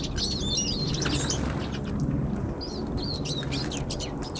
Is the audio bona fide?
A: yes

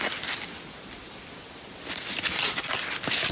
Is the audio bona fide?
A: yes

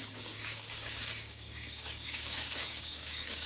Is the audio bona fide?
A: no